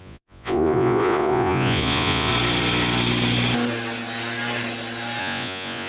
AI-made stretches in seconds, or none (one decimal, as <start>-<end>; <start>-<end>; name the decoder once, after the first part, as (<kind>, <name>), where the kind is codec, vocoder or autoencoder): 0.0-2.3 (vocoder, Vocos); 5.2-5.9